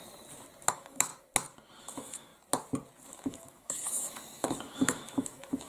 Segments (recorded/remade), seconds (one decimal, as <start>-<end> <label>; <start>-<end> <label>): 0.0-0.7 recorded; 0.7-1.1 remade; 1.1-1.8 recorded; 1.8-2.3 remade; 2.3-3.1 recorded; 3.1-5.7 remade